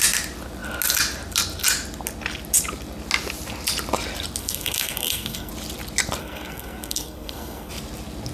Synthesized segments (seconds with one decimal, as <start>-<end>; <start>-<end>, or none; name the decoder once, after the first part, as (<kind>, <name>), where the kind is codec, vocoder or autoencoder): 4.4-5.5 (codec, SNAC); 6.2-7.7